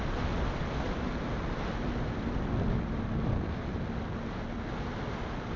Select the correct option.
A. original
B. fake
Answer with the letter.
A